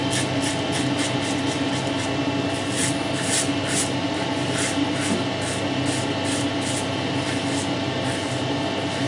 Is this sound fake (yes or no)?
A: no